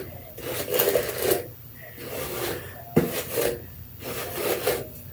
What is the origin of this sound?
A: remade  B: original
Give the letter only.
B